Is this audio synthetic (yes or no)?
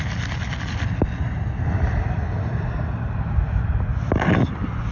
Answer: no